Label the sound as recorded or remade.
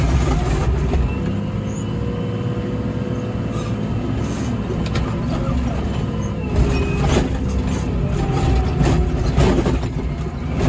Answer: recorded